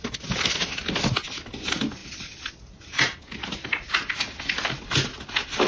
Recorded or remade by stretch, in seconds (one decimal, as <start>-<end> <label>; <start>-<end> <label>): 0.0-5.7 recorded